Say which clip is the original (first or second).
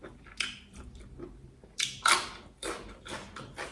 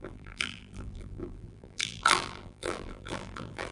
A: first